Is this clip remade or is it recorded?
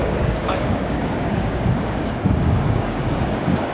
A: remade